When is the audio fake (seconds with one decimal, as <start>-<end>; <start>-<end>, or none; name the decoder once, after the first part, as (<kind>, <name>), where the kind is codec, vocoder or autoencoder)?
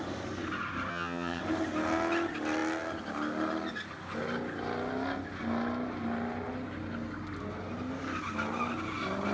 0.9-1.4 (vocoder, HiFi-GAN)